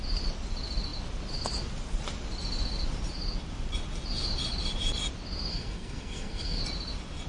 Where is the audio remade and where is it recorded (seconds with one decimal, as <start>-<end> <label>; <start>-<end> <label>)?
0.0-5.5 recorded; 5.5-6.6 remade; 6.6-7.3 recorded